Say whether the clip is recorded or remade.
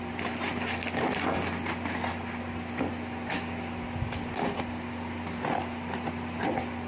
recorded